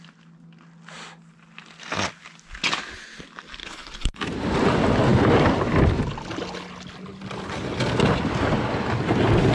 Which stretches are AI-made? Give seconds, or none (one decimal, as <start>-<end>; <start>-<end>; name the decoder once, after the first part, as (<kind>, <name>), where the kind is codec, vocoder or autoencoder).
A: 3.6-4.2 (codec, HILCodec)